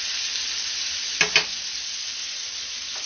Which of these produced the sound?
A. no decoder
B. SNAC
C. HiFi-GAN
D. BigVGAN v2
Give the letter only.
A